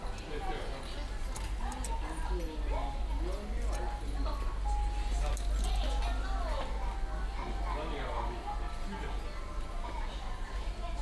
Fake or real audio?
real